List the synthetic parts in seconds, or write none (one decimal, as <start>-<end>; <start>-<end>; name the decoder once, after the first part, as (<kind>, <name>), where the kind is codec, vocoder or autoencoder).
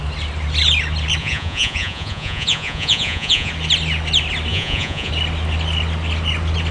1.2-3.5 (vocoder, Vocos); 4.5-5.1